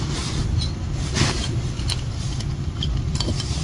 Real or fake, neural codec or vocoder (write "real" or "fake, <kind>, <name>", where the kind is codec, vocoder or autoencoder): real